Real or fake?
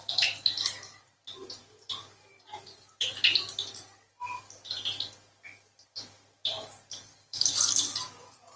real